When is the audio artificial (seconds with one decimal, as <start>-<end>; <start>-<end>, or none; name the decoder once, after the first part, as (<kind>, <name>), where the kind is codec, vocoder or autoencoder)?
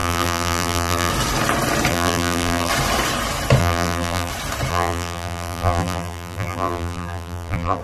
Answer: 0.0-1.1 (vocoder, BigVGAN v2); 1.9-2.7; 3.6-4.3; 4.7-7.8